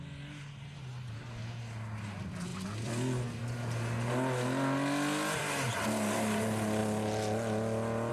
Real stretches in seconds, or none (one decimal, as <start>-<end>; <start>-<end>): 0.0-8.1